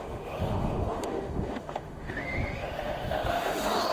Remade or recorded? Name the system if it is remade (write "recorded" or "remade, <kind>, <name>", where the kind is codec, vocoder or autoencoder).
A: remade, autoencoder, DAC-VAE